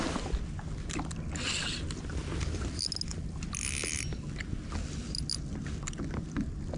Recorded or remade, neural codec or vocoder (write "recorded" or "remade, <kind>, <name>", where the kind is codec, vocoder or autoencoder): recorded